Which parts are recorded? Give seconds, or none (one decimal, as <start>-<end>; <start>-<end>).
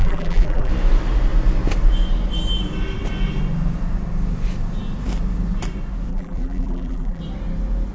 0.7-6.1; 7.2-7.9